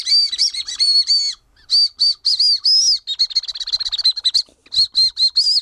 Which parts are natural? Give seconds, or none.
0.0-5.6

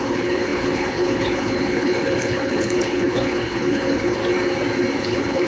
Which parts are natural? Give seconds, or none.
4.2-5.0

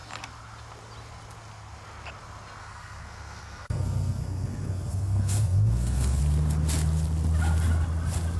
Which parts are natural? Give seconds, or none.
0.0-2.6; 6.2-8.4

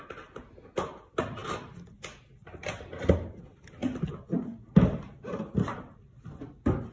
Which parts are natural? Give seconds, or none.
0.0-6.9